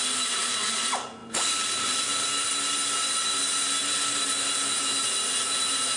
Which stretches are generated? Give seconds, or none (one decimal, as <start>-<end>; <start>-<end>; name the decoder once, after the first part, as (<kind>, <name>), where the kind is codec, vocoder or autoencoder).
none